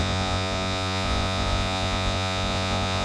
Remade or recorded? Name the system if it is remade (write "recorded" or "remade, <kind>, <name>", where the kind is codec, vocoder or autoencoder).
remade, vocoder, Vocos